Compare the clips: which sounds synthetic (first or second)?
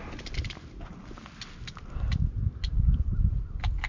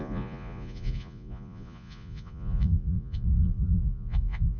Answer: second